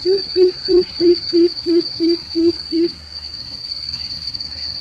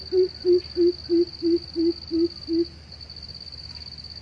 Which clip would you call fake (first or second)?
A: first